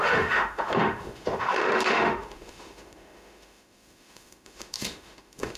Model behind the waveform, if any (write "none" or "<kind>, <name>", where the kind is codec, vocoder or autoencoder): autoencoder, DAC-VAE